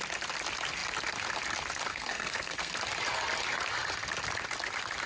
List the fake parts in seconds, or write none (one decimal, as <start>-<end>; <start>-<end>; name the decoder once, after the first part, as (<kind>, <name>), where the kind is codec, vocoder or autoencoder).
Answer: 1.9-2.7 (codec, SNAC)